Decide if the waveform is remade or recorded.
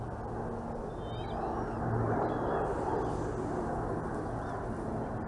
recorded